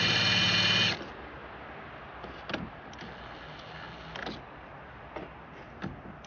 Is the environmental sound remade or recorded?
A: recorded